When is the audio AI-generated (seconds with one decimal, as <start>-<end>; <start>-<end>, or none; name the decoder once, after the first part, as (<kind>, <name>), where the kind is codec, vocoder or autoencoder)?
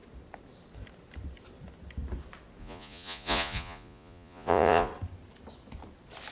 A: 2.6-4.9 (vocoder, Vocos)